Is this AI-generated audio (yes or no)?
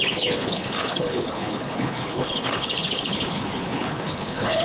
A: yes